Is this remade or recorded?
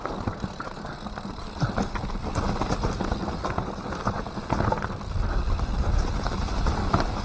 recorded